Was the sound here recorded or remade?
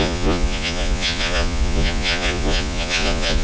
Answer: remade